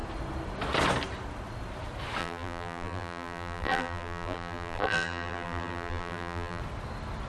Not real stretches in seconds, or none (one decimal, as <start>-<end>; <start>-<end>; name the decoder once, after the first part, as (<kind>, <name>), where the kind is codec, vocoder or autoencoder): 2.2-6.6 (vocoder, BigVGAN v2)